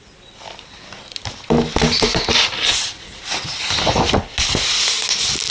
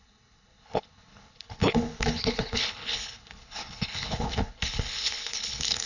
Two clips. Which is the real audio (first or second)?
first